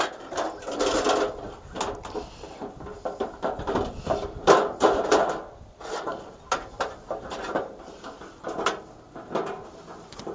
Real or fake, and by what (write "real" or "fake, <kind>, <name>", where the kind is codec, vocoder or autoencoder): real